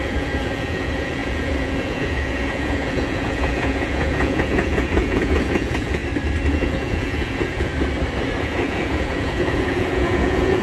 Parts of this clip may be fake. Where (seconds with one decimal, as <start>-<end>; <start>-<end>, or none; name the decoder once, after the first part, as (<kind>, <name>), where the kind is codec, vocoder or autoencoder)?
0.0-6.0 (vocoder, Vocos); 6.5-7.7; 8.4-10.6